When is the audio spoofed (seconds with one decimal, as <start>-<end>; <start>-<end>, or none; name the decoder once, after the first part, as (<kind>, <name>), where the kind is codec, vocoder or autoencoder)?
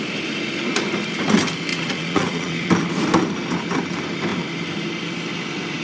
1.7-2.7 (vocoder, Vocos)